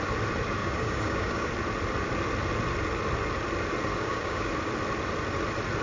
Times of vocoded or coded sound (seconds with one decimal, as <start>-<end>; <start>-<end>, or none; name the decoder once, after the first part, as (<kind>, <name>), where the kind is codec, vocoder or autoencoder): 0.6-1.5 (codec, DAC); 3.9-4.5